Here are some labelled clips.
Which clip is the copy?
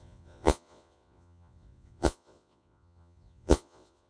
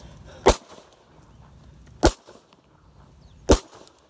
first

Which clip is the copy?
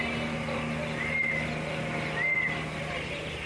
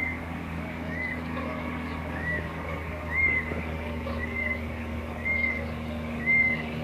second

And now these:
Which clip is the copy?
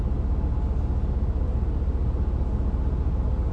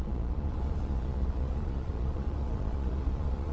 second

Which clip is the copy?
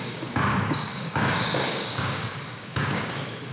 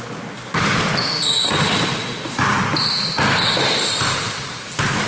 first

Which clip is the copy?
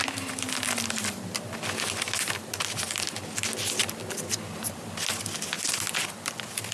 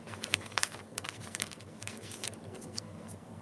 second